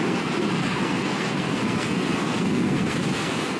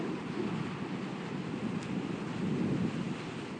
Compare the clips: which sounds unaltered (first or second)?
second